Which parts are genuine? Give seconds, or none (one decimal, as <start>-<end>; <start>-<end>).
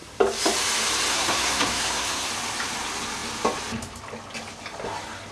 0.0-1.1; 2.3-5.3